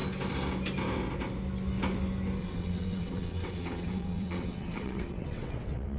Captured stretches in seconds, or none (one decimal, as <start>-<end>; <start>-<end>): 0.0-2.4

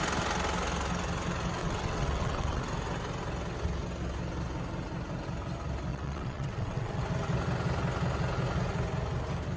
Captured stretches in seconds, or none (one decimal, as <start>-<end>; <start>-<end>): 0.0-1.6; 2.6-5.9; 7.0-9.6

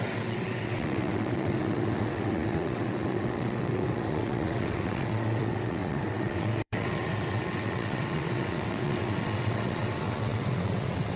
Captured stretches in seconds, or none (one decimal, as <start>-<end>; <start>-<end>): none

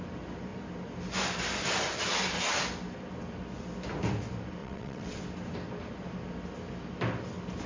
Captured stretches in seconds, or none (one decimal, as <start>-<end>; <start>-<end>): 0.0-4.6; 5.2-7.7

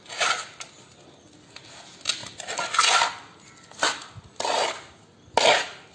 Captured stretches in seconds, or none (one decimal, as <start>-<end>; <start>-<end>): 0.0-5.9

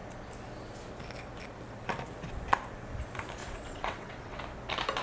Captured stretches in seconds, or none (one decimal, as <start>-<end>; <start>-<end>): 0.0-3.4; 4.4-5.0

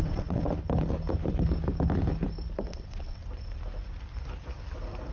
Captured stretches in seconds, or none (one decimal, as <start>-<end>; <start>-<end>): 0.4-2.6; 3.2-5.1

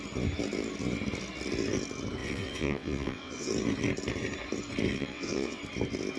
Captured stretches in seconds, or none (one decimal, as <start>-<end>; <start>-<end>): 0.0-2.2; 3.5-4.9; 5.6-6.2